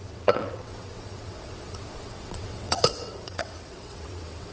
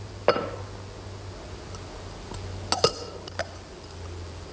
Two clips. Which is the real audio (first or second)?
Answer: second